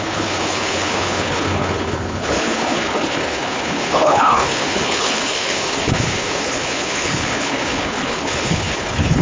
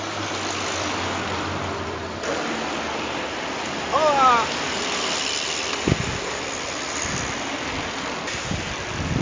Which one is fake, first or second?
first